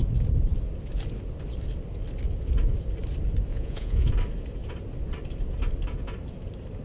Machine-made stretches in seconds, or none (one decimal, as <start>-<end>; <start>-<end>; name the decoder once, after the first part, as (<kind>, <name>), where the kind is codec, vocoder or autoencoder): 3.5-4.1 (vocoder, Vocos)

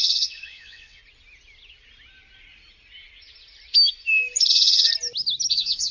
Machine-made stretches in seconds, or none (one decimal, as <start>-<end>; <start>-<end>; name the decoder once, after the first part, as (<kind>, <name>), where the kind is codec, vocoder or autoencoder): 0.0-1.0 (vocoder, WaveNeXt); 4.5-4.9; 5.5-5.9

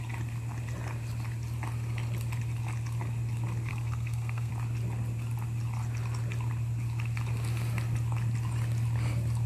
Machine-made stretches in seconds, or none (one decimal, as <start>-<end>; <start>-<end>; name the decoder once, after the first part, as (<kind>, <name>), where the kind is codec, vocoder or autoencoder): 3.7-4.5 (codec, SNAC)